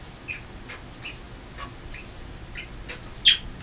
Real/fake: real